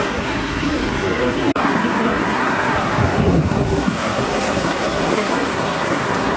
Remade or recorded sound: remade